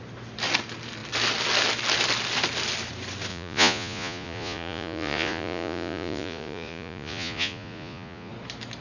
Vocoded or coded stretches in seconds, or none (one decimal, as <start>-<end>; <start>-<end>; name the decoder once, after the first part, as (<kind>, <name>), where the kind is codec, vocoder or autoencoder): 3.3-8.3 (vocoder, Vocos)

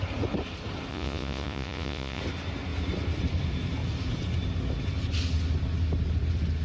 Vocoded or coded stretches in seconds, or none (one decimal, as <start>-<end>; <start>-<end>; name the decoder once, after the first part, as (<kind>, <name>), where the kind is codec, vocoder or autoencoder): 0.9-2.2 (vocoder, Vocos)

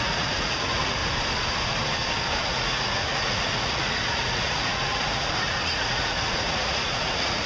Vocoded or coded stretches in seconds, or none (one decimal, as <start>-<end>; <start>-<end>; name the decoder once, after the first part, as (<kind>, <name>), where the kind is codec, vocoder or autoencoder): 0.0-1.0 (vocoder, Vocos); 2.4-7.5